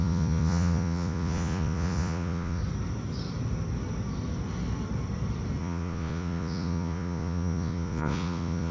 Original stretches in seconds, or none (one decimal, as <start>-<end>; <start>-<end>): 2.6-5.6